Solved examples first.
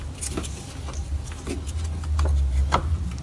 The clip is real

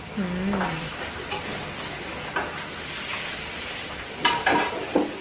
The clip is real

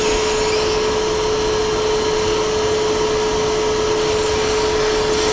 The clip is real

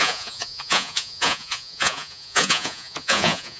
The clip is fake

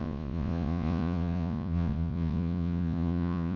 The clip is fake